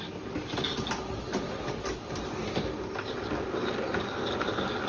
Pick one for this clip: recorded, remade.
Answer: recorded